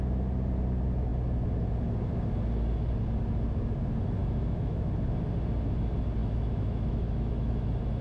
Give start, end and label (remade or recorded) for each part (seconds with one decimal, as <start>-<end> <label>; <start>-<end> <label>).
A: 0.0-4.2 recorded; 4.2-4.9 remade; 4.9-6.2 recorded; 6.2-7.5 remade; 7.5-8.0 recorded